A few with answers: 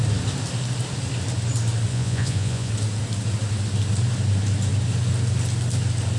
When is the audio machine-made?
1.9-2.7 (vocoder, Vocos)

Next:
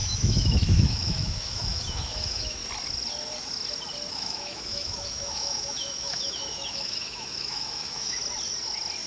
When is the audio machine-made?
0.0-2.6 (autoencoder, DAC-VAE); 4.1-8.2

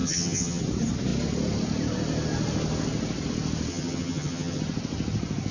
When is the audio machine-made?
0.0-0.6 (vocoder, HiFi-GAN); 3.7-4.6

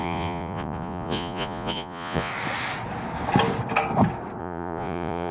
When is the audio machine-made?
0.0-2.3 (vocoder, Vocos); 4.4-5.3

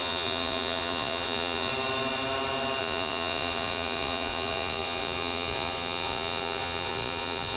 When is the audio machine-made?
0.0-1.7 (vocoder, Vocos); 2.8-7.6

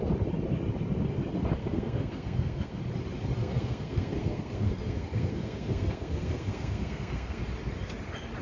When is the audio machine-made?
1.6-2.8 (codec, SNAC); 3.4-7.4

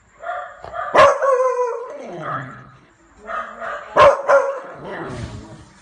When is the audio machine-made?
1.8-2.9 (codec, HILCodec); 4.5-5.1

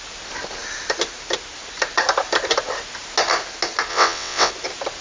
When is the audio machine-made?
3.9-4.5 (vocoder, WaveNeXt)